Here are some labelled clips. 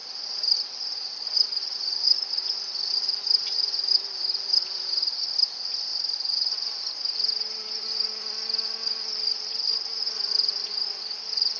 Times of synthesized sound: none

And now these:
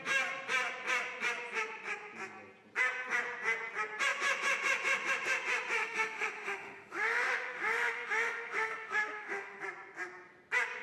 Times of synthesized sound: 5.8-9.6 (autoencoder, DAC-VAE)